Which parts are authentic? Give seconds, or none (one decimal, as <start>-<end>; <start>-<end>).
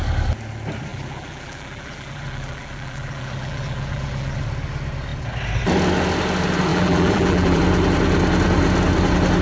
0.0-0.9; 4.4-6.7; 7.6-9.4